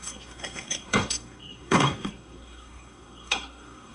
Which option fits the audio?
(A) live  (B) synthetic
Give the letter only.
B